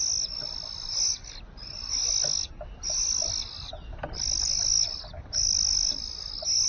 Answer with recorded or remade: recorded